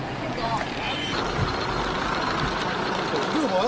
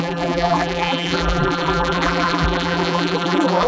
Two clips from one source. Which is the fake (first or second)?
second